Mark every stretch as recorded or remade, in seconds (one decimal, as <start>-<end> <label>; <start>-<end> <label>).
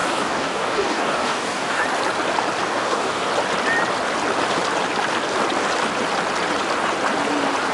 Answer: 0.0-1.8 remade; 1.8-2.6 recorded; 2.6-3.3 remade; 3.3-7.7 recorded